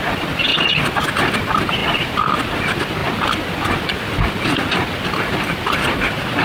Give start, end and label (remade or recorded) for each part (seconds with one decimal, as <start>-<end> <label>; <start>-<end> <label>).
0.0-1.8 recorded; 1.8-2.6 remade; 2.6-6.4 recorded